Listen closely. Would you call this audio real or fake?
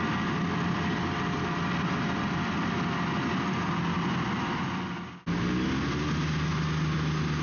real